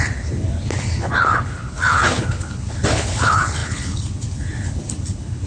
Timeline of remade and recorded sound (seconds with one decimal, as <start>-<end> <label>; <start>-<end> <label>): 0.0-5.5 remade